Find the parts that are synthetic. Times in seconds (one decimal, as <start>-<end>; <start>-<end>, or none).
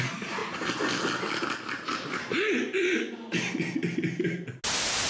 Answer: none